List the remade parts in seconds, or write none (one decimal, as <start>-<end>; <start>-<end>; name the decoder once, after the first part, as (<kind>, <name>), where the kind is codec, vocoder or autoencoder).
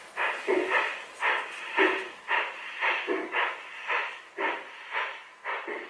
none